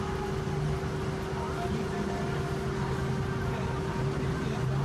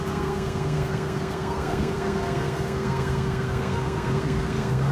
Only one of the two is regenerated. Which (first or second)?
second